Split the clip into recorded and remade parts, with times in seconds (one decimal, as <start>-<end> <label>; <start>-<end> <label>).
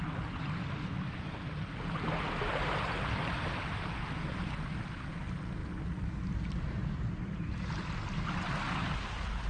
0.0-9.5 recorded